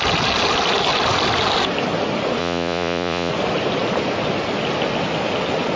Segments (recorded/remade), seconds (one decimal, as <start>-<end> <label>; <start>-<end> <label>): 0.0-2.4 recorded; 2.4-3.3 remade; 3.3-5.8 recorded